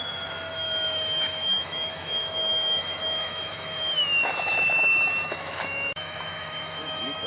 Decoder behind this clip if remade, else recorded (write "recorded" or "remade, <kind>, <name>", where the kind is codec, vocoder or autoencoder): remade, autoencoder, DAC-VAE